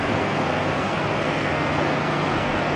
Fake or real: fake